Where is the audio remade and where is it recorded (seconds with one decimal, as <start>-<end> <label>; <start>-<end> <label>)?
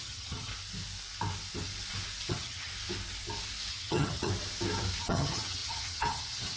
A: 0.0-0.5 remade; 0.5-2.3 recorded; 2.3-2.7 remade; 2.7-3.7 recorded; 3.7-4.3 remade; 4.3-5.0 recorded; 5.0-6.6 remade